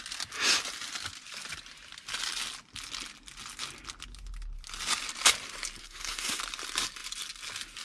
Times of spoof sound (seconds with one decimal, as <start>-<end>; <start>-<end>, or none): 5.8-6.4